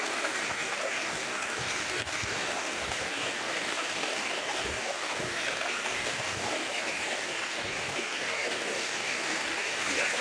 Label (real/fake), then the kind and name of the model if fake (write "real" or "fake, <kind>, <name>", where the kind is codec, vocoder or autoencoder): fake, codec, DAC